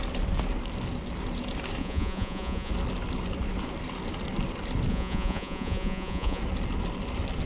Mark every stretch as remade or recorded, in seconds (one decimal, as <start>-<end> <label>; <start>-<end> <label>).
0.0-1.8 recorded; 1.8-2.7 remade; 2.7-4.9 recorded; 4.9-6.4 remade; 6.4-7.5 recorded

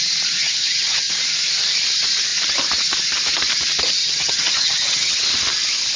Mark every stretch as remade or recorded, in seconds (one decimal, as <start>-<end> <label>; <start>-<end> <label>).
0.0-0.4 recorded; 0.4-1.1 remade; 1.1-4.0 recorded; 4.0-5.2 remade; 5.2-6.0 recorded

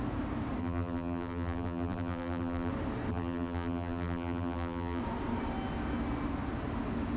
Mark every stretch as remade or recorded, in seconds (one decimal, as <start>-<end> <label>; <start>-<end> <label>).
0.0-0.6 recorded; 0.6-2.7 remade; 2.7-3.1 recorded; 3.1-5.0 remade; 5.0-7.2 recorded

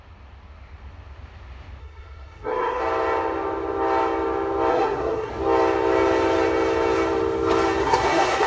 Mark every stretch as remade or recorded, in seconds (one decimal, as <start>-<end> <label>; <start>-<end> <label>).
0.0-1.8 recorded; 1.8-2.8 remade; 2.8-4.7 recorded; 4.7-5.3 remade; 5.3-7.8 recorded; 7.8-8.5 remade

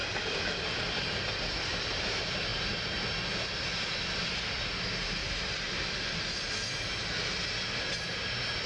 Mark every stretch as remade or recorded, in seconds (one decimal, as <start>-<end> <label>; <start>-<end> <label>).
0.0-2.1 remade; 2.1-5.2 recorded; 5.2-6.7 remade; 6.7-8.7 recorded

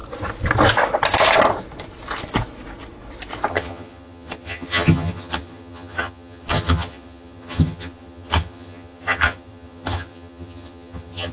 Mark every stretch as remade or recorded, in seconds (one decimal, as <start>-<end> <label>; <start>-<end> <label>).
0.0-3.5 recorded; 3.5-11.3 remade

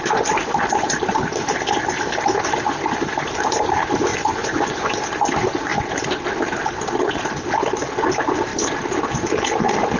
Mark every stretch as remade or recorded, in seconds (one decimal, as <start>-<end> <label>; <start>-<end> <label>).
0.0-4.1 recorded; 4.1-4.9 remade; 4.9-10.0 recorded